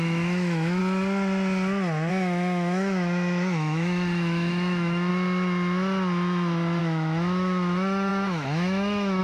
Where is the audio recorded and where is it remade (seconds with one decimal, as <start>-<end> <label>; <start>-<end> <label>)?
0.0-0.8 remade; 0.8-2.1 recorded; 2.1-5.1 remade; 5.1-6.8 recorded; 6.8-9.2 remade